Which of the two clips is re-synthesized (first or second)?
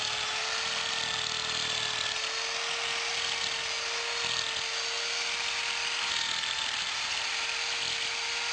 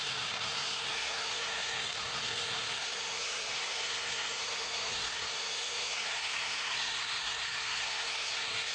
second